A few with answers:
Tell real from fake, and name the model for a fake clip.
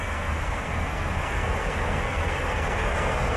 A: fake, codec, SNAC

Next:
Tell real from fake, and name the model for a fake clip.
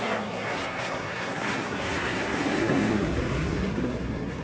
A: fake, codec, SNAC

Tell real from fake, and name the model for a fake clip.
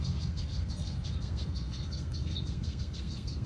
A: fake, codec, SNAC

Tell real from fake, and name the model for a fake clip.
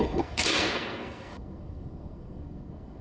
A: fake, codec, SNAC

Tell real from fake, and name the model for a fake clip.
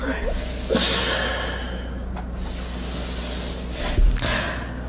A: real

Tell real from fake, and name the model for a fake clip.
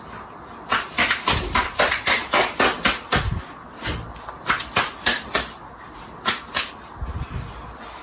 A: real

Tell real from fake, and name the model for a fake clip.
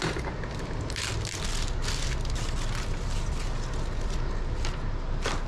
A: real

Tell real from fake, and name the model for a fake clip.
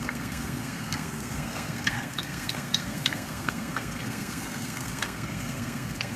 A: fake, codec, SNAC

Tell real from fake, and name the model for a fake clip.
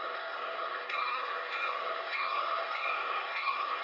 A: fake, codec, SNAC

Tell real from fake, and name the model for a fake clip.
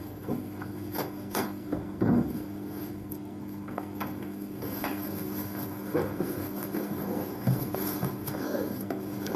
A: fake, codec, SNAC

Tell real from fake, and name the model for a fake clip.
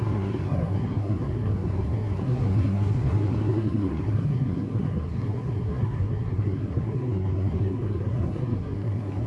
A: fake, codec, SNAC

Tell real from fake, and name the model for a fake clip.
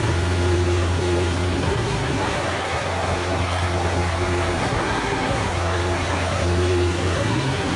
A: fake, codec, SNAC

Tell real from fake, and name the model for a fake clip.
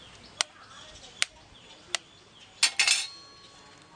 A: real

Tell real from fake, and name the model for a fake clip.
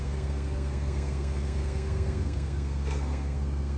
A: fake, codec, SNAC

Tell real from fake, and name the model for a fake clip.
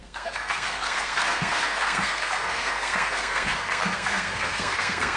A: fake, codec, SNAC